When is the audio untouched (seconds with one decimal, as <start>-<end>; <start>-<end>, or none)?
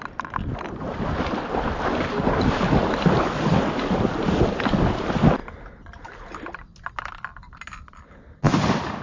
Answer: 0.0-9.0